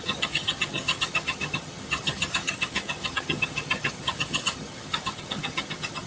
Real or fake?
fake